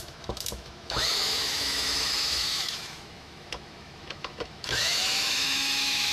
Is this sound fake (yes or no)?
yes